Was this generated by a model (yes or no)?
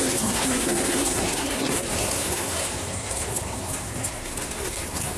yes